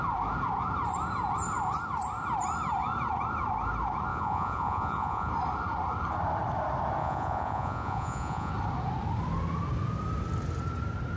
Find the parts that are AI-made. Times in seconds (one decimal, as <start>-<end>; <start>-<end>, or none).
4.1-5.3; 7.0-8.5